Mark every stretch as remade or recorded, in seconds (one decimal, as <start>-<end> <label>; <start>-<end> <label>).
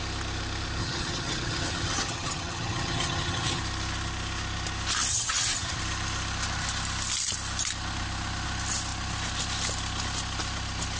0.0-0.8 recorded; 0.8-3.6 remade; 3.6-5.1 recorded; 5.1-5.8 remade; 5.8-11.0 recorded